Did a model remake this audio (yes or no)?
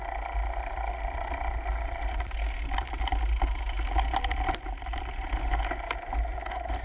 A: no